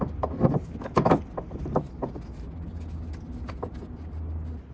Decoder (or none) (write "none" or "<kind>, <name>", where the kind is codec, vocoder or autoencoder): none